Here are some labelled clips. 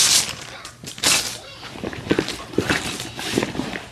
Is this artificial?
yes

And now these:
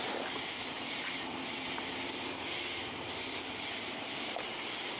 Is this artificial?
no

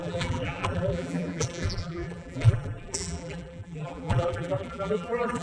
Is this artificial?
yes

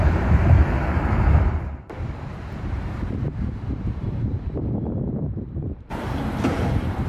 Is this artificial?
yes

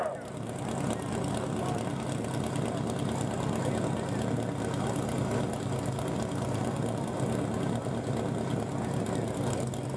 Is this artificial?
no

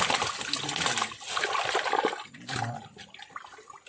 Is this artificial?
no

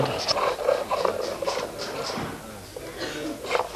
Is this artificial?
no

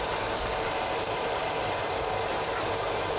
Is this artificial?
yes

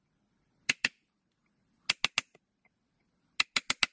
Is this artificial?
no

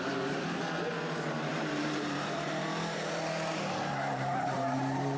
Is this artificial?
yes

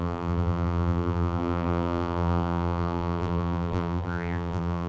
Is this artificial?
yes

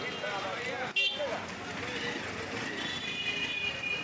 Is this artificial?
no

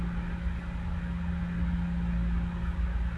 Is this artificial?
no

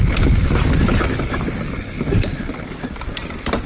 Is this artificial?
no